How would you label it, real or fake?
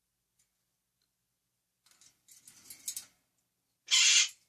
real